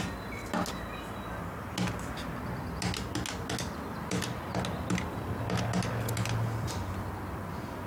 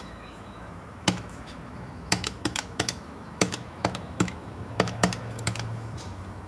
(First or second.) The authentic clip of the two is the first